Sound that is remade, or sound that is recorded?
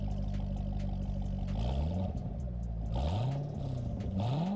recorded